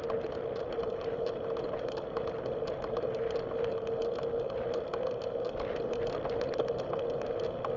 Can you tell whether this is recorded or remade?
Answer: recorded